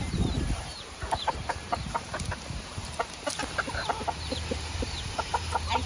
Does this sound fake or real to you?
fake